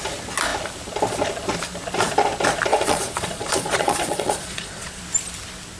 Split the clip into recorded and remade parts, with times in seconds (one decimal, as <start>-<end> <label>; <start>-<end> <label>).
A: 0.0-2.7 recorded; 2.7-5.0 remade; 5.0-5.8 recorded